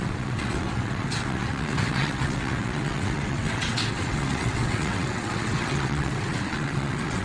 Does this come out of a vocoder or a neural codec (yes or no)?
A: yes